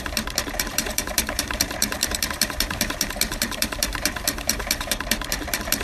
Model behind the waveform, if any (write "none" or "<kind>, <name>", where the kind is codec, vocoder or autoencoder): vocoder, BigVGAN v2